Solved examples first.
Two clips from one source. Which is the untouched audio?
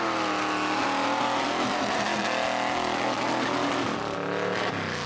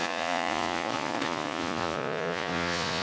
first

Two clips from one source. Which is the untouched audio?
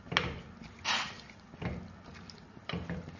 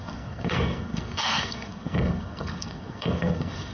first